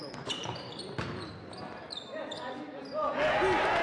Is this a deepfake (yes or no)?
no